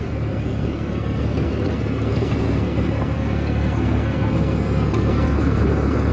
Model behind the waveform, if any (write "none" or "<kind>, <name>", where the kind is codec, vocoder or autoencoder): codec, SNAC